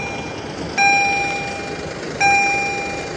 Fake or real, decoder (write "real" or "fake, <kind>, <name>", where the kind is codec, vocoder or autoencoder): real